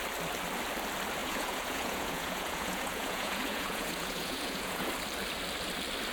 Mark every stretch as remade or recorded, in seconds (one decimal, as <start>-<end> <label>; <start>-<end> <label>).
0.0-1.2 recorded; 1.2-4.9 remade; 4.9-6.1 recorded